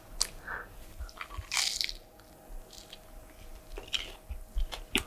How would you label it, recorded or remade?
recorded